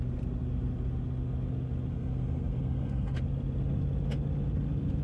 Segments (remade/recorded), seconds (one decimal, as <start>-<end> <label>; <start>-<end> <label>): 0.0-1.9 recorded; 1.9-3.2 remade; 3.2-5.0 recorded